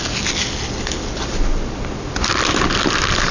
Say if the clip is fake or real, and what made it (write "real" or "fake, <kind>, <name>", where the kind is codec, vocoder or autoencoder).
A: real